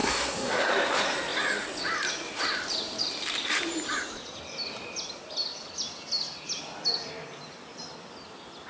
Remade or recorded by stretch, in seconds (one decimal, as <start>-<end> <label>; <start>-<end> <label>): 0.0-0.7 remade; 0.7-8.7 recorded